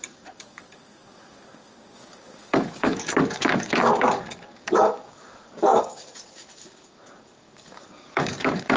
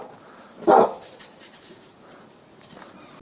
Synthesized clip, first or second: first